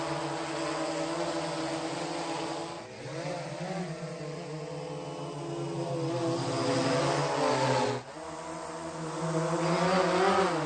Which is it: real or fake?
real